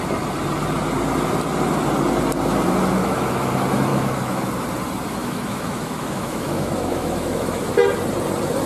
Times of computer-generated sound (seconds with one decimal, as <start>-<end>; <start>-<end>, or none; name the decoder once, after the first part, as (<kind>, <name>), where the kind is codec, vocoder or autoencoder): 3.0-3.5 (autoencoder, DAC-VAE); 3.9-4.5; 5.2-7.7